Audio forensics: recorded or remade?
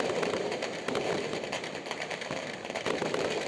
remade